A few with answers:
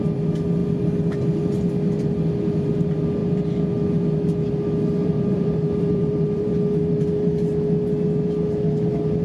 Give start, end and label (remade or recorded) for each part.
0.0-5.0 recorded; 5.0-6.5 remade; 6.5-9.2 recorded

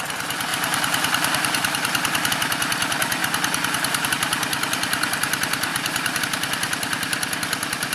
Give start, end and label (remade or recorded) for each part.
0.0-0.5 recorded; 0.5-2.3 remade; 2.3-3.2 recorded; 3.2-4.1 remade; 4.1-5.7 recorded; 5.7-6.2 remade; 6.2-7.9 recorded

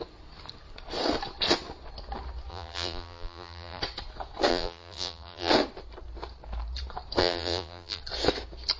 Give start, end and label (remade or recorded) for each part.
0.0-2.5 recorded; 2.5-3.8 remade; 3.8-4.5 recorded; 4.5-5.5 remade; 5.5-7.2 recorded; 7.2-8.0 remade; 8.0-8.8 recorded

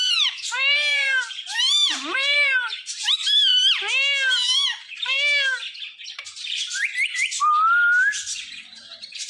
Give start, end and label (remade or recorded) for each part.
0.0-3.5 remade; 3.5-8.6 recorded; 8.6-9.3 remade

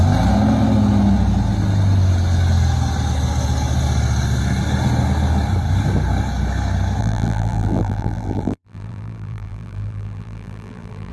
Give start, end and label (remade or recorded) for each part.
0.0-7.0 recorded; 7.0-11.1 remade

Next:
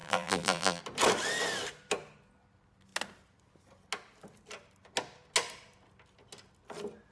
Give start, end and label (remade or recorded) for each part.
0.0-0.8 remade; 0.8-7.1 recorded